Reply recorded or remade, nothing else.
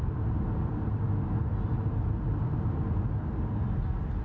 recorded